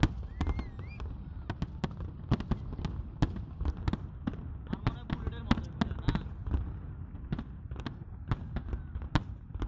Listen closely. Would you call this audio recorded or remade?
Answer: recorded